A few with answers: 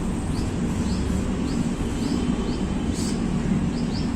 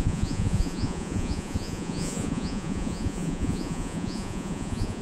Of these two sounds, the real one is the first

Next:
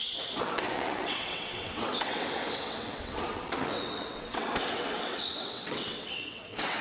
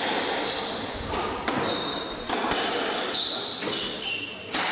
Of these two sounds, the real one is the second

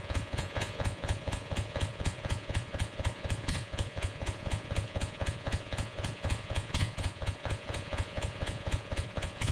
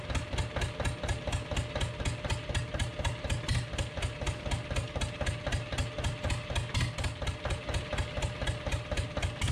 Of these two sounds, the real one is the second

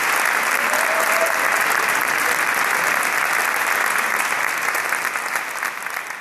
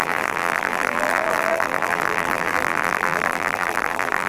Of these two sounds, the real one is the first